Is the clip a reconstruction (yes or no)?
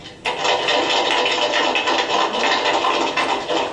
no